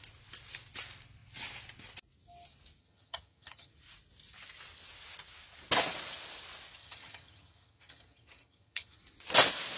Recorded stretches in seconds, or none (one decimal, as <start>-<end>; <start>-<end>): 0.0-2.8; 3.7-6.8; 9.0-9.8